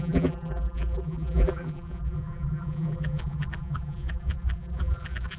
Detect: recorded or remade remade